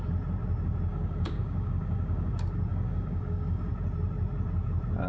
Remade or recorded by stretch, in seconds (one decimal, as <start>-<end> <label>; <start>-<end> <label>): 0.0-0.9 recorded; 0.9-2.3 remade; 2.3-2.7 recorded; 2.7-3.7 remade; 3.7-5.1 recorded